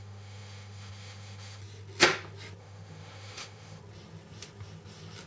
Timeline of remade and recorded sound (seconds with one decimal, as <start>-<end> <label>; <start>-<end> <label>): 0.0-1.6 remade; 1.6-2.6 recorded; 2.6-3.8 remade; 3.8-5.3 recorded